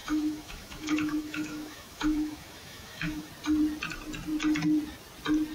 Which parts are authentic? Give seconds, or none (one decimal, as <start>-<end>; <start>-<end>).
3.3-5.5